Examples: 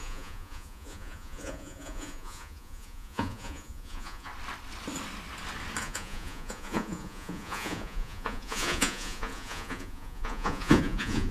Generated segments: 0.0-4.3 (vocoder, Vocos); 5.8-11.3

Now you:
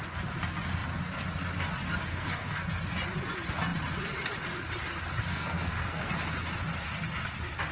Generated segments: 2.1-2.7 (codec, SNAC); 5.3-6.1

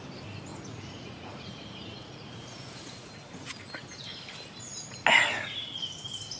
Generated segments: 0.5-3.1 (vocoder, Vocos)

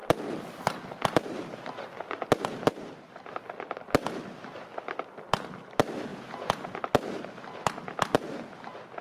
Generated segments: 6.1-6.8 (vocoder, Vocos)

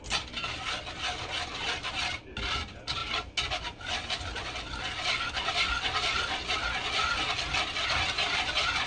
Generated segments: none